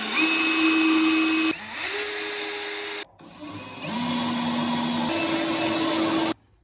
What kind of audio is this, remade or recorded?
recorded